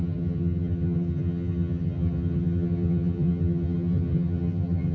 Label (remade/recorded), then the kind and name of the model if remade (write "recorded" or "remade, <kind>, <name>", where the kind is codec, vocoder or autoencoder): remade, vocoder, HiFi-GAN